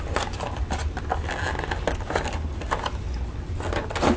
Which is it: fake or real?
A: real